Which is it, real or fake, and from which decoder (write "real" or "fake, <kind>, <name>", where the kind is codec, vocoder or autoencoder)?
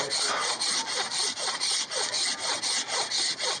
real